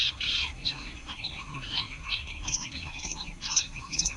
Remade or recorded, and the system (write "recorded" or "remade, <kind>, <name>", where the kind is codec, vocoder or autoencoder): remade, codec, SNAC